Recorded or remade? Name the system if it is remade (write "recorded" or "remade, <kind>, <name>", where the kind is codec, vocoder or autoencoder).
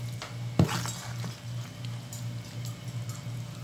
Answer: recorded